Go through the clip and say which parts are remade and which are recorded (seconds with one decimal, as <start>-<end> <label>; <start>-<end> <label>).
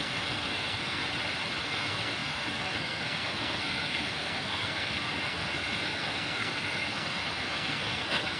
0.0-1.0 remade; 1.0-1.6 recorded; 1.6-8.4 remade